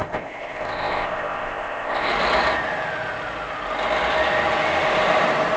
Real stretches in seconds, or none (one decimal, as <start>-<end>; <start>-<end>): 2.1-5.6